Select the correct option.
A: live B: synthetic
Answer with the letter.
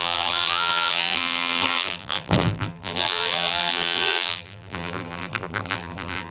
B